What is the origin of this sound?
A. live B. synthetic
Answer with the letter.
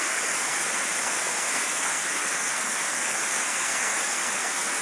B